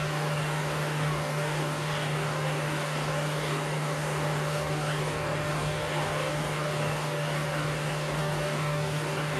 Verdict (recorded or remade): remade